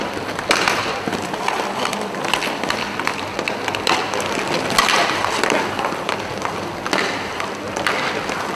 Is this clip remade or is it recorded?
recorded